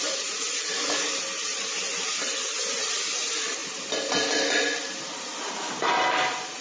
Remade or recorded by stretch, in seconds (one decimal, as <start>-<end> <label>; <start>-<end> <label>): 0.0-6.6 recorded